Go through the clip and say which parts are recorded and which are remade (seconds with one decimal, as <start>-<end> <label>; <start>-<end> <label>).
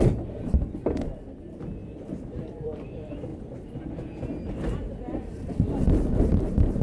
0.0-3.3 remade; 3.3-5.8 recorded; 5.8-6.8 remade